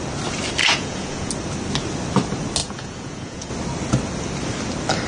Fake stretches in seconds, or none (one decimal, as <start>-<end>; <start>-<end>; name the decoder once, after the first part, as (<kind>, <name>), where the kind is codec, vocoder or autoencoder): 0.6-1.3 (vocoder, Vocos); 2.6-3.5